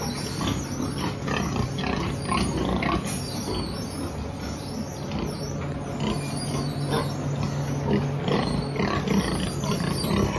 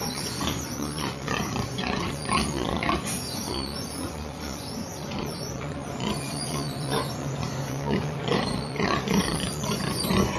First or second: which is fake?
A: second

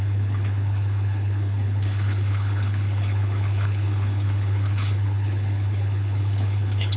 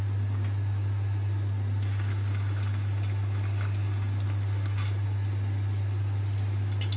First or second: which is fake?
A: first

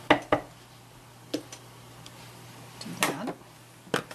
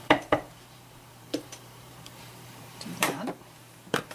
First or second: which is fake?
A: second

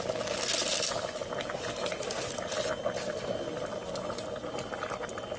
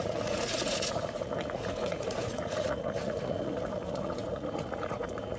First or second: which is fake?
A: second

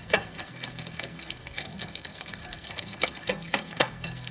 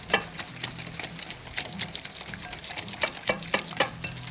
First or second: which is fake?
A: first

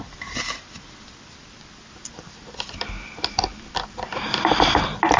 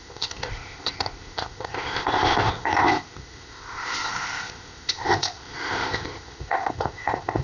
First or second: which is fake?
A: second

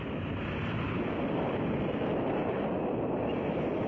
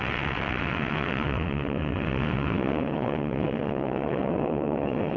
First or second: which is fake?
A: second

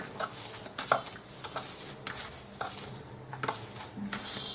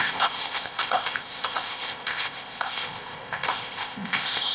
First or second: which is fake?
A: second